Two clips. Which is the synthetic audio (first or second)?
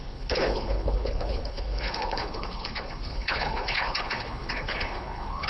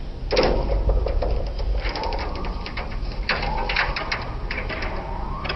first